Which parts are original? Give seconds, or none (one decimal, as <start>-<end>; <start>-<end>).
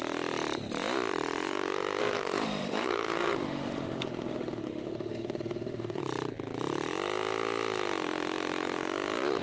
0.0-2.0; 6.0-9.4